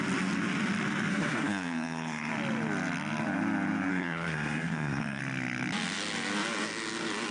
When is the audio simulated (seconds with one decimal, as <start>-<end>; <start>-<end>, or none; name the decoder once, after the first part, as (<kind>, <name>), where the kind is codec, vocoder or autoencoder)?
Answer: 1.1-2.3 (codec, SNAC); 3.9-5.2